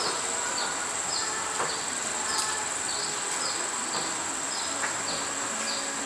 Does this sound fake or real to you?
real